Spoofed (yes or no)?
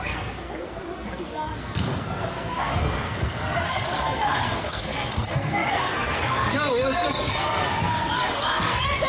yes